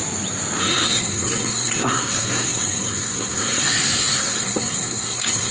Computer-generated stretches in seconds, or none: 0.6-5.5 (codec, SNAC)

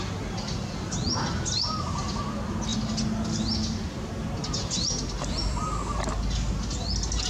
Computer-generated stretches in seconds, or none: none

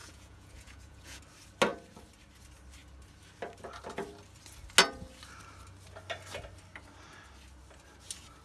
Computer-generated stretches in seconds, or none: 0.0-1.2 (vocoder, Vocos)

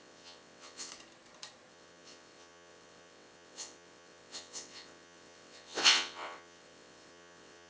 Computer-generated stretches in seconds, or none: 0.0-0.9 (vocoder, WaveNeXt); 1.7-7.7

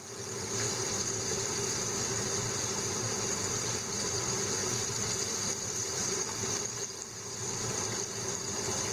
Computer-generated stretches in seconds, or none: 4.6-6.2 (vocoder, BigVGAN v2)

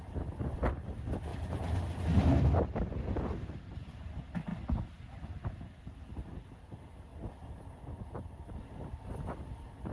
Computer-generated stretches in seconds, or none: 1.3-2.4 (vocoder, BigVGAN v2)